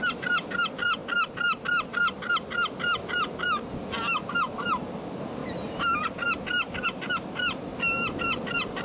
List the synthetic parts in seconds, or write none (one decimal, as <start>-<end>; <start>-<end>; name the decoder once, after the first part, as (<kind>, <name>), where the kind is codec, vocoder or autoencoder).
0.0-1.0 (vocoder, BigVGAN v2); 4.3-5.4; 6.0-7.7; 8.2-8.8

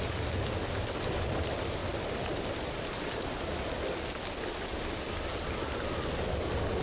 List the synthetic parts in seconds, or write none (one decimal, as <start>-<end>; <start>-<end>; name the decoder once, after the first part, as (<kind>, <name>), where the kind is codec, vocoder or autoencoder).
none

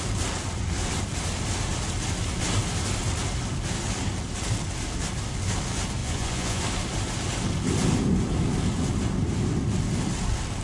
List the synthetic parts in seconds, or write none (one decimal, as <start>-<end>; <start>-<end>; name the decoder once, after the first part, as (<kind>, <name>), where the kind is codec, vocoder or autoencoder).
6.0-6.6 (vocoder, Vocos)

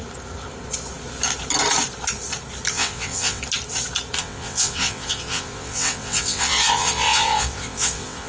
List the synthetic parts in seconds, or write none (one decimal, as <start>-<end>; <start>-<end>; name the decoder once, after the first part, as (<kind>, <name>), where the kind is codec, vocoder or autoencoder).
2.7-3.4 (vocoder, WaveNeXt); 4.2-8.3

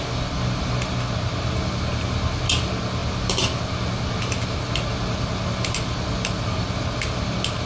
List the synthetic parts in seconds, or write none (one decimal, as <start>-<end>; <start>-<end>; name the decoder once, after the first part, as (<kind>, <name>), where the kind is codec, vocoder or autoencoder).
none